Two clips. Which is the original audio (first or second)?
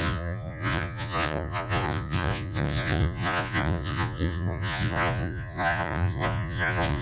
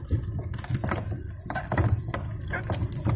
second